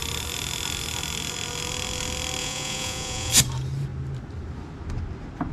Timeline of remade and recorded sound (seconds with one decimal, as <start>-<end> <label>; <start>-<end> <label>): 0.0-2.4 recorded; 2.4-3.3 remade; 3.3-5.5 recorded

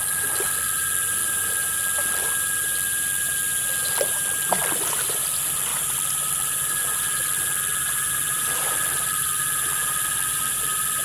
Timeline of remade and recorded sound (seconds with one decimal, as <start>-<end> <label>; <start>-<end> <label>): 0.0-11.0 recorded